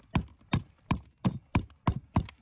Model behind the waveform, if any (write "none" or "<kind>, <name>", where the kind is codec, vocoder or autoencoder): none